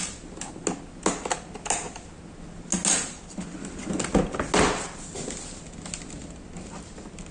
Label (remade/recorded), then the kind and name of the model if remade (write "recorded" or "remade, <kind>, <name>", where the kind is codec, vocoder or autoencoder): recorded